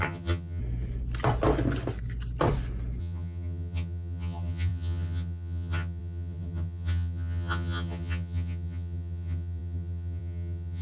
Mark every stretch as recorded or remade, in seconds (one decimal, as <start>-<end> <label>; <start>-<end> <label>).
0.0-0.6 remade; 0.6-3.0 recorded; 3.0-10.8 remade